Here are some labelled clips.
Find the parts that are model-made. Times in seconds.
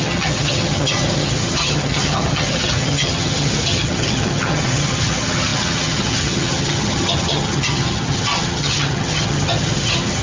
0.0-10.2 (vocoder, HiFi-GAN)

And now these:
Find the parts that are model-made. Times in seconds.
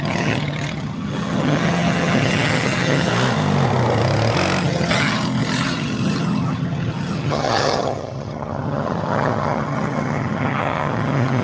0.0-3.1 (vocoder, HiFi-GAN); 4.6-11.4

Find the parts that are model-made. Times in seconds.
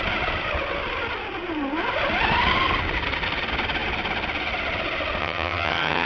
5.2-6.1 (vocoder, HiFi-GAN)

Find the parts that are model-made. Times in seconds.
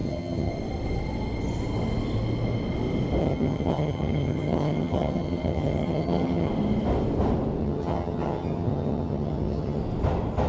0.0-0.5 (vocoder, HiFi-GAN); 3.2-6.5; 7.6-9.8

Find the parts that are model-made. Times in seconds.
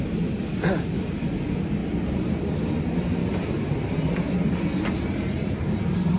none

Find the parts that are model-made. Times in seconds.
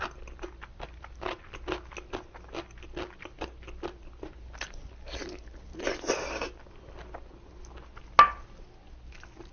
none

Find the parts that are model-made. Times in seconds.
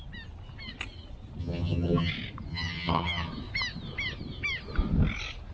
1.4-2.1 (vocoder, HiFi-GAN); 2.5-3.3